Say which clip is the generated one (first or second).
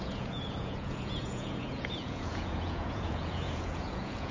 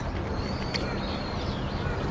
first